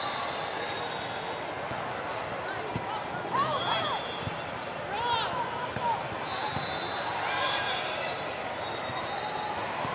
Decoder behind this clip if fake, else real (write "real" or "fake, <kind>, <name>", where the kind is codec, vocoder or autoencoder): real